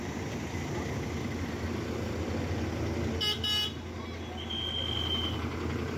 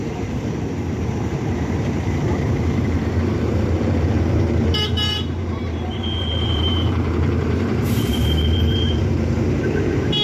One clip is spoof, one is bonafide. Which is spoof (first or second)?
second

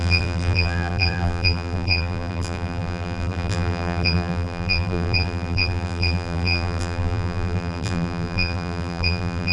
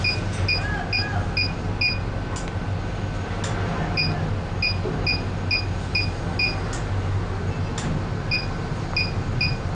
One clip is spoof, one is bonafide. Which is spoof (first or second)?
first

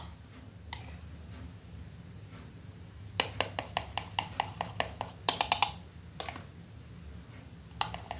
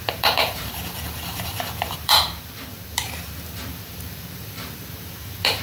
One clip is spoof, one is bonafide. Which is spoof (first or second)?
second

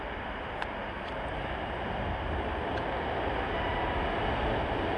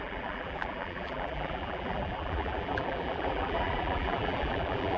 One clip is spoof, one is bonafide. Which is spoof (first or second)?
second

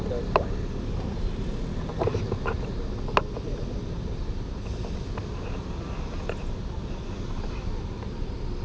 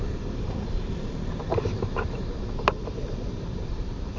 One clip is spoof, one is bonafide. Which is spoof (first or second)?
second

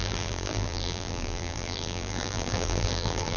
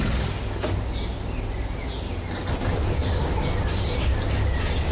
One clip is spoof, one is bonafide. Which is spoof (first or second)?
first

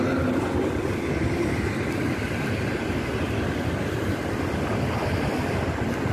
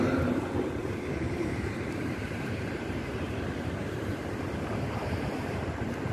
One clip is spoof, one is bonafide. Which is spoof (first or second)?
second